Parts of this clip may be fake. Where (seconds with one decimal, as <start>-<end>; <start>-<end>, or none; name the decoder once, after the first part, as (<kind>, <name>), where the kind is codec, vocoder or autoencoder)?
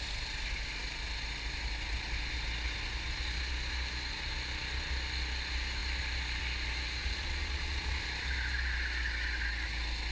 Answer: 7.0-8.0 (vocoder, Vocos)